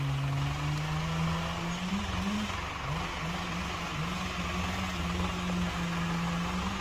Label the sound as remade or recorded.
recorded